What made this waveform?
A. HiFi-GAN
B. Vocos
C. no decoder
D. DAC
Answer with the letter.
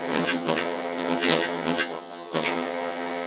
A